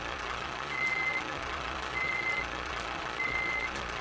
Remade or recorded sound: remade